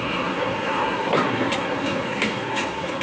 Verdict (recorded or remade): remade